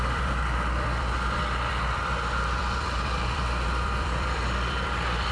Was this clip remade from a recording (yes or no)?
yes